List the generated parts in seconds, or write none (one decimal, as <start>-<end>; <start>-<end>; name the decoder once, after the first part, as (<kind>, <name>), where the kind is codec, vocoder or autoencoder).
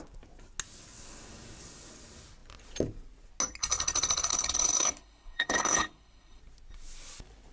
4.3-6.4 (codec, HILCodec)